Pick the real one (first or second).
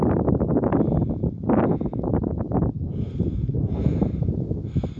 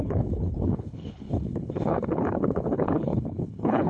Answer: first